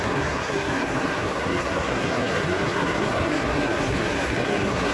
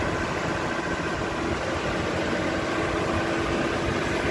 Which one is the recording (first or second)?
second